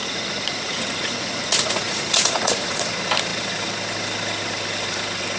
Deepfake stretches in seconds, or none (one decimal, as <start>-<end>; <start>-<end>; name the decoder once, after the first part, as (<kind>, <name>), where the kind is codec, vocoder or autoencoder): 0.0-2.9 (vocoder, Vocos)